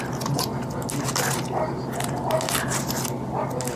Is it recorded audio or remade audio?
recorded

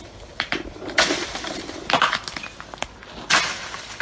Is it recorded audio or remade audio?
recorded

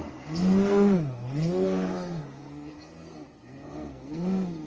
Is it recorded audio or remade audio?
remade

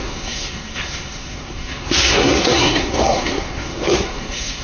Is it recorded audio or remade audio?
remade